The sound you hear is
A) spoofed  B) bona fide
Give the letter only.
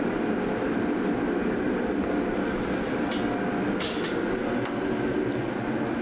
B